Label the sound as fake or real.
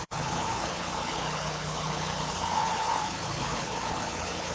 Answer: fake